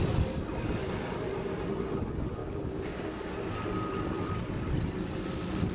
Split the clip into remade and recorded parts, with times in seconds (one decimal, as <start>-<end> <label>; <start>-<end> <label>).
0.0-2.4 recorded; 2.4-3.3 remade; 3.3-5.7 recorded